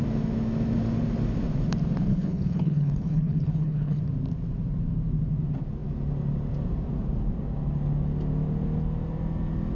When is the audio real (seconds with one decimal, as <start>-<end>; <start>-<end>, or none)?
0.0-2.1; 4.0-9.8